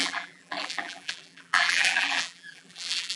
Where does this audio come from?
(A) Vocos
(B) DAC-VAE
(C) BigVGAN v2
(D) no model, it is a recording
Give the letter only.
C